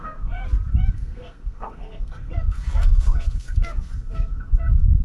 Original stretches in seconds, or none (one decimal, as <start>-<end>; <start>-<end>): 0.4-0.9